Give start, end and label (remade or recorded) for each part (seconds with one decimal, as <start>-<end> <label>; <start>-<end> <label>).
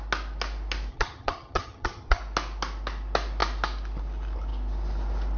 0.0-0.9 recorded; 0.9-2.2 remade; 2.2-5.4 recorded